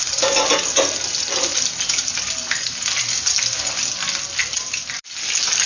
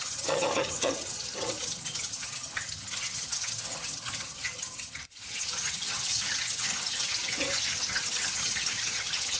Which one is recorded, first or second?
first